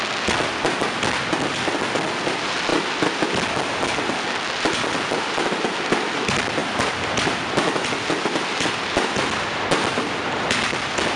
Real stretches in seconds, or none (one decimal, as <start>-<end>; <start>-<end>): 0.0-11.2